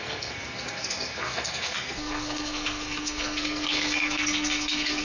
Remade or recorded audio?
remade